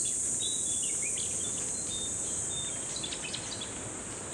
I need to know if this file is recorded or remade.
recorded